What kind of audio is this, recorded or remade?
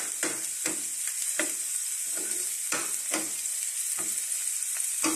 recorded